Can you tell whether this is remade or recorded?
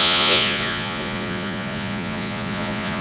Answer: remade